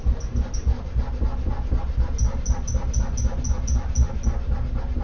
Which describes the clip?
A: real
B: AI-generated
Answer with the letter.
A